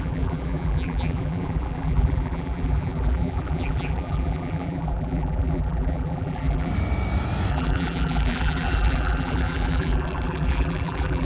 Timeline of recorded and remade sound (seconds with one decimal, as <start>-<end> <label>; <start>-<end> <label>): 0.0-6.7 remade; 6.7-7.5 recorded; 7.5-11.2 remade